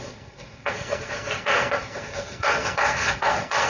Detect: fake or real fake